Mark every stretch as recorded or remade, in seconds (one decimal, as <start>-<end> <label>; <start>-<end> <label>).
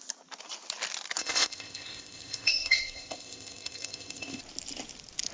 0.0-1.2 recorded; 1.2-4.4 remade; 4.4-5.3 recorded